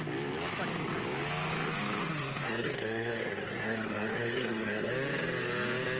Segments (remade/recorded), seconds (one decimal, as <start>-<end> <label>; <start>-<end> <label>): 0.0-2.0 recorded; 2.0-4.9 remade; 4.9-6.0 recorded

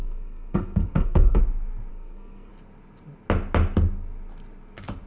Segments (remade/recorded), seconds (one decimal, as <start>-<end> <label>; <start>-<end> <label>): 0.0-1.4 remade; 1.4-1.9 recorded; 1.9-2.5 remade; 2.5-5.1 recorded